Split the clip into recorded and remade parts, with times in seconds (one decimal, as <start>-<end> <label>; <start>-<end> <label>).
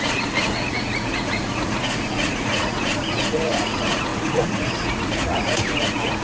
0.0-6.2 remade